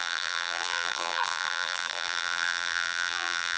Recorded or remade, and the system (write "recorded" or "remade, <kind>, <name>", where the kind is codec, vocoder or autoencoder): remade, vocoder, BigVGAN v2